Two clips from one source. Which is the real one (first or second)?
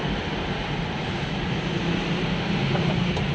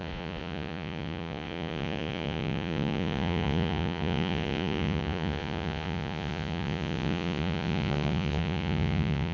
first